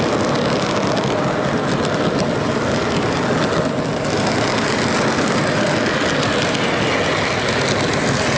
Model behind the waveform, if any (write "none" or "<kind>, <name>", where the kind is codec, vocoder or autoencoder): none